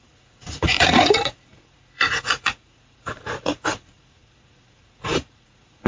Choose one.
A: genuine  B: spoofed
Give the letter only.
B